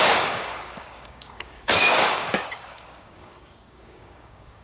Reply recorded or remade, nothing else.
remade